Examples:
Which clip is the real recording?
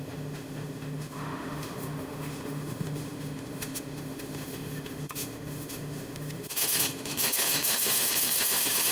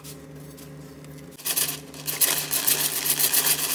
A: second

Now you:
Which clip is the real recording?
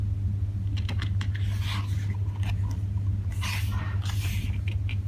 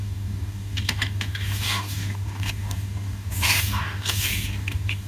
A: first